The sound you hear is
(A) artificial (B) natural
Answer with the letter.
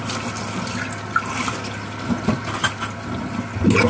B